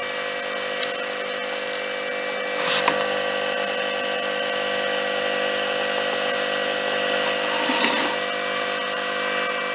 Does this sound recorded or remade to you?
recorded